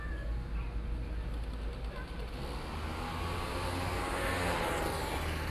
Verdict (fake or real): real